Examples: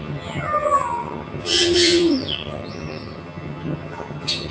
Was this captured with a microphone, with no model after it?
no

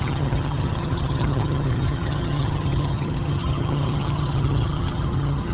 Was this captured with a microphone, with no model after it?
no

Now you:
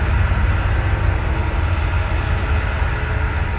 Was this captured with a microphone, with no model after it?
yes